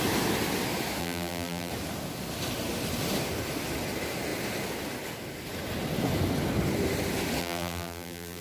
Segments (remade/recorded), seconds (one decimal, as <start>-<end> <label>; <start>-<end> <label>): 0.0-1.0 recorded; 1.0-1.7 remade; 1.7-7.4 recorded; 7.4-8.4 remade